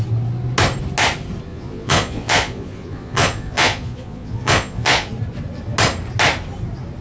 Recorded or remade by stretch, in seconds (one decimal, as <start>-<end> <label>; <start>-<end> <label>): 0.0-1.5 recorded; 1.5-5.1 remade; 5.1-7.0 recorded